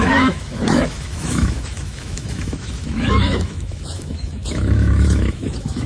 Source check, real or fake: fake